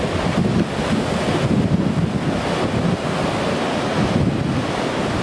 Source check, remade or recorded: recorded